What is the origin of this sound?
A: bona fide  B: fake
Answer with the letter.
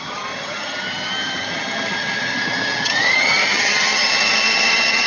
B